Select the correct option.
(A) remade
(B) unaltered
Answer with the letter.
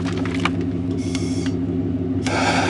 B